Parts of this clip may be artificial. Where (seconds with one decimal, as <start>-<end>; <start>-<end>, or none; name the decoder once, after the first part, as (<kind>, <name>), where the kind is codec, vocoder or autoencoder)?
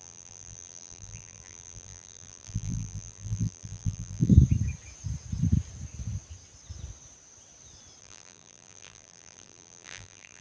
0.0-4.3 (vocoder, BigVGAN v2); 8.0-10.4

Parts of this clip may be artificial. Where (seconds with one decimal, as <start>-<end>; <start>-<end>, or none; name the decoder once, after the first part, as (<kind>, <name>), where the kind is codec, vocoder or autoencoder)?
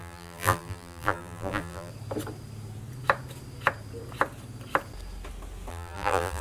0.0-1.9 (vocoder, BigVGAN v2); 5.7-6.4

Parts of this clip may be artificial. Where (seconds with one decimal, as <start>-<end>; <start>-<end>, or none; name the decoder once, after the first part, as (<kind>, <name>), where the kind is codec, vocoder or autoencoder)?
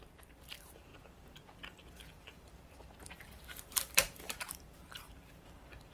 0.0-0.9 (vocoder, BigVGAN v2); 2.1-5.9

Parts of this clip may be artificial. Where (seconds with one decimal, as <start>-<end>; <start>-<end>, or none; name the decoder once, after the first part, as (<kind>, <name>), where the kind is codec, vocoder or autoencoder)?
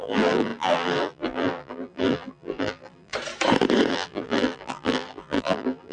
0.0-3.1 (vocoder, BigVGAN v2); 3.9-5.9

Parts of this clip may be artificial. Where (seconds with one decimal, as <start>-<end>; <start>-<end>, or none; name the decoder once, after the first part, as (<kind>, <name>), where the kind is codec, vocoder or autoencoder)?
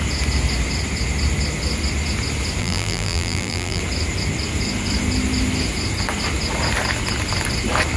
2.6-3.8 (vocoder, BigVGAN v2)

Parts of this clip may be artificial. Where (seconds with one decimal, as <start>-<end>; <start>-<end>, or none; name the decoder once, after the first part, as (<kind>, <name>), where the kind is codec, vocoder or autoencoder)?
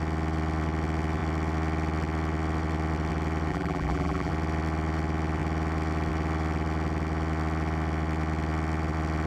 3.5-4.3 (vocoder, BigVGAN v2)